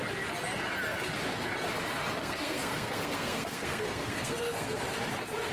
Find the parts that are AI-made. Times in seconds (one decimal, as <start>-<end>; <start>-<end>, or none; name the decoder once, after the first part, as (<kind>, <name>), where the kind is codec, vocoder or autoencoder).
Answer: 2.2-4.8 (codec, SNAC)